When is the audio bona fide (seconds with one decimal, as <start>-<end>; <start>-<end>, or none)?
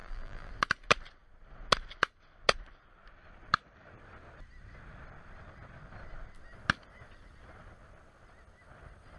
0.5-9.2